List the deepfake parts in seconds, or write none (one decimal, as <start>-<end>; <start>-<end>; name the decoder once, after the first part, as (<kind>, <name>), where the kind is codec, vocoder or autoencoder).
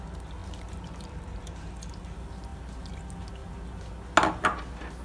0.4-1.7 (vocoder, BigVGAN v2)